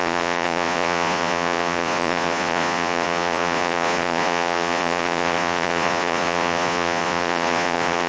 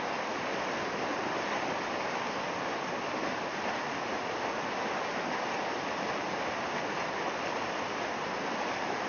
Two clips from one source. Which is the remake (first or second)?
first